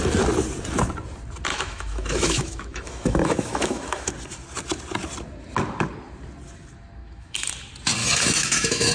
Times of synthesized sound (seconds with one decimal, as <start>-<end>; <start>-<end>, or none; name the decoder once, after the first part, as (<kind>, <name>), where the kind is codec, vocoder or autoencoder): 1.5-4.1 (autoencoder, DAC-VAE); 7.0-7.5; 8.0-8.9